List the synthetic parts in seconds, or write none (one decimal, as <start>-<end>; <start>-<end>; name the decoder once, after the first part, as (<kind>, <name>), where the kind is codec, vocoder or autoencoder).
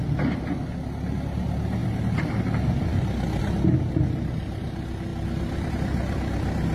none